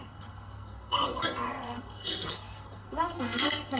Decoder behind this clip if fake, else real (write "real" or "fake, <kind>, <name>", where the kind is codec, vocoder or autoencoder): fake, codec, SNAC